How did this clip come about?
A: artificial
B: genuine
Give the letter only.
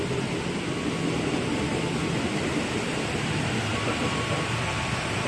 B